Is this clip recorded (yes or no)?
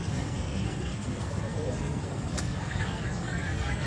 no